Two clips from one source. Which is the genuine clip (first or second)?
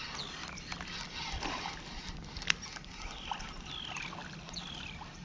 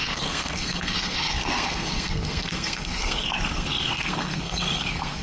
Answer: first